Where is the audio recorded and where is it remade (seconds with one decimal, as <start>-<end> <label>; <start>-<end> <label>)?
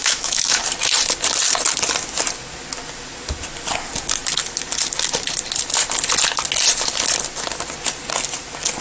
0.0-0.6 remade; 0.6-8.8 recorded